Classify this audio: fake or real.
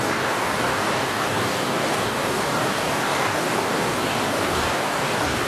fake